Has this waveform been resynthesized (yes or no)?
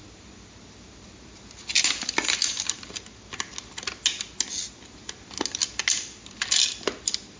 no